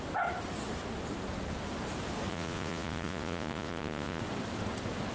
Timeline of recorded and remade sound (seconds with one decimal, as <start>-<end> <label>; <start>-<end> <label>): 0.0-2.3 recorded; 2.3-4.2 remade; 4.2-5.1 recorded